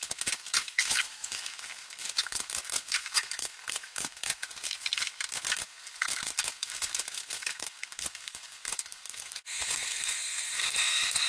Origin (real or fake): fake